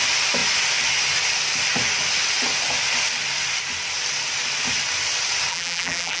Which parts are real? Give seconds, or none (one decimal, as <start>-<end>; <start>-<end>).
0.0-5.5